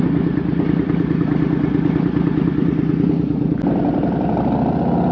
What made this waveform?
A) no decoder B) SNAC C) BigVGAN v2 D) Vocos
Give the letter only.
A